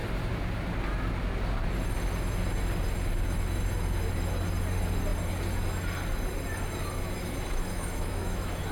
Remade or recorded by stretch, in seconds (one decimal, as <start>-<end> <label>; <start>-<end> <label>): 0.0-7.2 recorded; 7.2-8.7 remade